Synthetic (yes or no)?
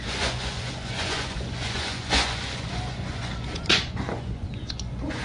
yes